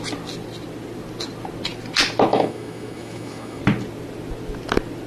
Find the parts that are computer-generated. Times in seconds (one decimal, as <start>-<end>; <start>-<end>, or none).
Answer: 2.3-3.6